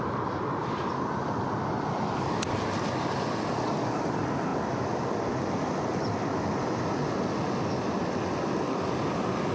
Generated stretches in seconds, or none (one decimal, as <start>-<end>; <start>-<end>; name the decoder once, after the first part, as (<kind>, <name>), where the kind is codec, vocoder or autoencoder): none